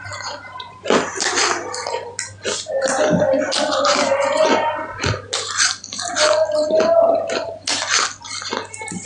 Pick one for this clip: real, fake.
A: real